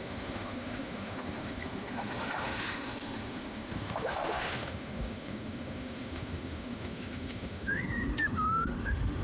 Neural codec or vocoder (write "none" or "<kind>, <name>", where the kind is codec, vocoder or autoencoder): autoencoder, DAC-VAE